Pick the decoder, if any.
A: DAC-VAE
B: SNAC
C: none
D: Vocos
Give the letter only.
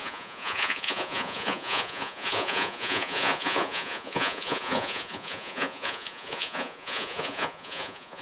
D